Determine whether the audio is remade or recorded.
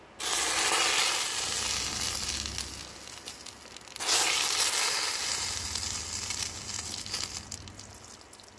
recorded